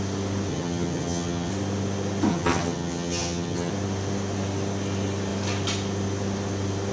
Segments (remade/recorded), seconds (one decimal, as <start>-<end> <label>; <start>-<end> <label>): 0.0-0.5 recorded; 0.5-1.5 remade; 1.5-2.3 recorded; 2.3-3.7 remade; 3.7-6.9 recorded